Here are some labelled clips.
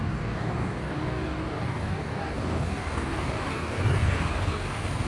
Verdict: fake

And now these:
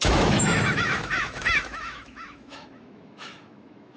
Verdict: fake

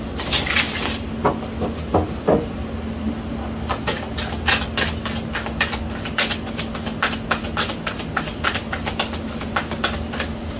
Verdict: real